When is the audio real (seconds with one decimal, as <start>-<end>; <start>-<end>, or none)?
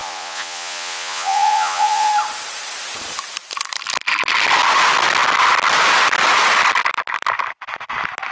2.1-8.3